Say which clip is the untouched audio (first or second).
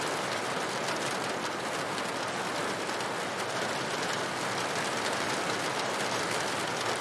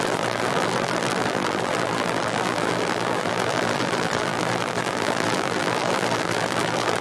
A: first